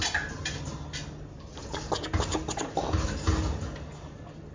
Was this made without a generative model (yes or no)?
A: yes